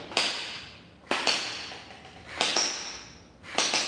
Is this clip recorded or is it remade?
recorded